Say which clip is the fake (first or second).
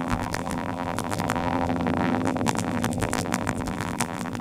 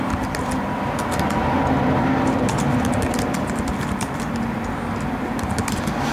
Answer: first